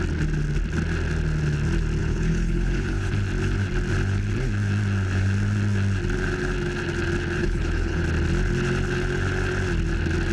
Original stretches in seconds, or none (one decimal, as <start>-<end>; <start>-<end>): 0.0-2.0; 3.1-7.4; 8.0-10.3